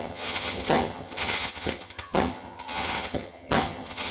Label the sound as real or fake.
fake